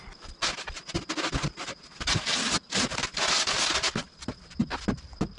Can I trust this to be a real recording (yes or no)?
yes